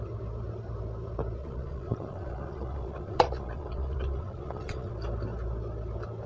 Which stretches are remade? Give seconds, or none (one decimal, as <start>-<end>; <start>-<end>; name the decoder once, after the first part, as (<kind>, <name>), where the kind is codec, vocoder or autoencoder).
1.4-4.9 (vocoder, Vocos)